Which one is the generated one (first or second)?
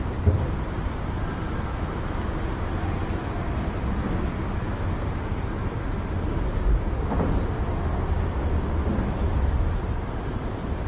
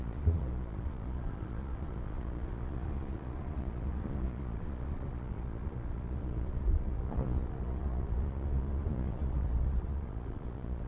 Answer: second